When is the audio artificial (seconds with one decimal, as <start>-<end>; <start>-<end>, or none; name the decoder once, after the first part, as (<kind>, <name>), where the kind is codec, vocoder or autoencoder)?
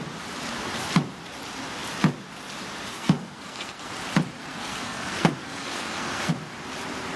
2.9-3.9 (codec, SNAC); 4.4-6.3